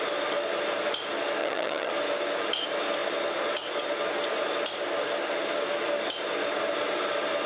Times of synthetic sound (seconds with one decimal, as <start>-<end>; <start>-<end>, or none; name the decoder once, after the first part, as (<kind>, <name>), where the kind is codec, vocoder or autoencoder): 1.4-1.9 (vocoder, HiFi-GAN)